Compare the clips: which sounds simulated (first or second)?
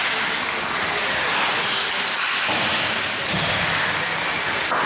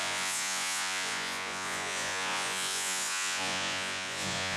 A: second